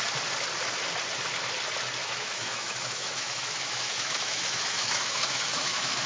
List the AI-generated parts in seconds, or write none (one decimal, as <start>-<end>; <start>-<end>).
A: 2.0-6.1